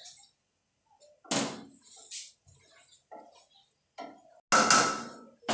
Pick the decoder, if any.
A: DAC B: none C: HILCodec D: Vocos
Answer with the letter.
B